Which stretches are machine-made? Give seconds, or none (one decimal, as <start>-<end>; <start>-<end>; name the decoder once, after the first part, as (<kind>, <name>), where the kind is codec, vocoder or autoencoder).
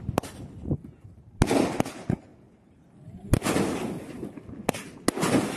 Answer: none